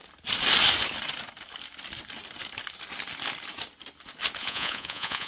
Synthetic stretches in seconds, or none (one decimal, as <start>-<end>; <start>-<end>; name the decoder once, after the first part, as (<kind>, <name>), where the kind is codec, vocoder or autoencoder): 4.4-5.3 (vocoder, Vocos)